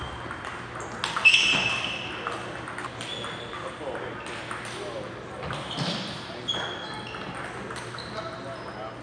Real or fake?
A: real